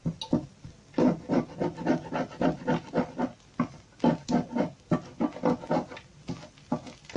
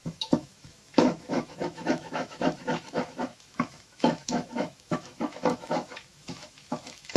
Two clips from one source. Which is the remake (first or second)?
second